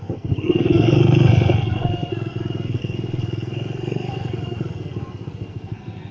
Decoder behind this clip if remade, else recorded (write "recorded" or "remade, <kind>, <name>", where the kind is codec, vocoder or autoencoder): remade, codec, SNAC